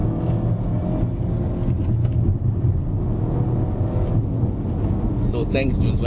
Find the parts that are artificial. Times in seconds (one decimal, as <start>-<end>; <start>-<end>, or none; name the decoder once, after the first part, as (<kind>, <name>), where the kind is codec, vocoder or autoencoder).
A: 0.0-0.5 (autoencoder, DAC-VAE)